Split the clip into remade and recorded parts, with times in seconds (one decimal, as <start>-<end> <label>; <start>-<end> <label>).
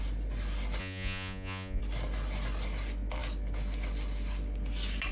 0.0-0.8 recorded; 0.8-1.8 remade; 1.8-5.1 recorded